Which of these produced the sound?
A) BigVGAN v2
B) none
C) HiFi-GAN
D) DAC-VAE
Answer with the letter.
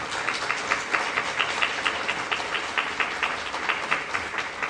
B